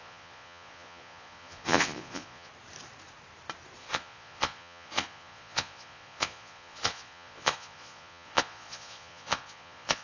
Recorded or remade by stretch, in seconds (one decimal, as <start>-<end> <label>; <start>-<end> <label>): 0.0-2.5 remade; 2.5-3.8 recorded; 3.8-10.0 remade